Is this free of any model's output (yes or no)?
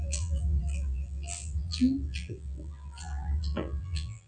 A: no